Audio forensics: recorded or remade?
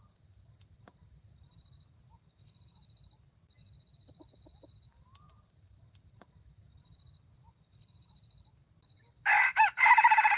recorded